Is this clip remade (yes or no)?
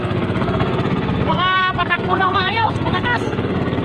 yes